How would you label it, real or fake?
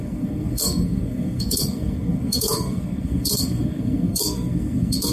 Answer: fake